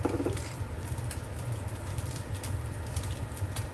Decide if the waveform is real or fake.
fake